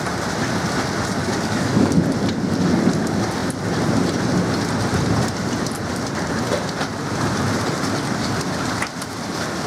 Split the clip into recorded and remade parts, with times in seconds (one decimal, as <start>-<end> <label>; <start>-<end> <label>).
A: 0.0-1.2 recorded; 1.2-2.0 remade; 2.0-9.7 recorded